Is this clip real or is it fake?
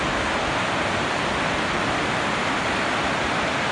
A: real